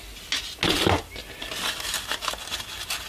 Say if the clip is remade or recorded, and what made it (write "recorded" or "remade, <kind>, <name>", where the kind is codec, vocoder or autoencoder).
recorded